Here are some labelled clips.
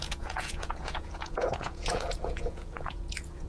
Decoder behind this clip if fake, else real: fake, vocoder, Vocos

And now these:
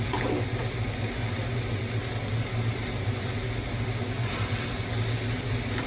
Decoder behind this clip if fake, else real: real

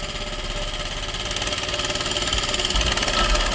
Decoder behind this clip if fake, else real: real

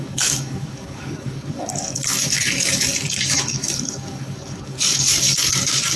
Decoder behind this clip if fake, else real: fake, codec, DAC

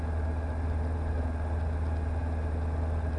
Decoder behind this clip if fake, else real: real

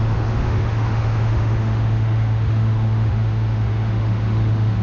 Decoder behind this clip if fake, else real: fake, autoencoder, DAC-VAE